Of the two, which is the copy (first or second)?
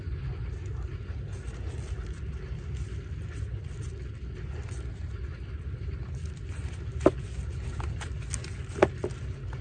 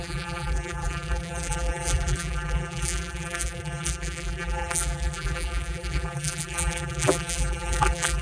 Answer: second